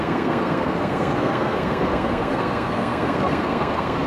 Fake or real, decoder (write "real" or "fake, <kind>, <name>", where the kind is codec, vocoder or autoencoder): fake, codec, SNAC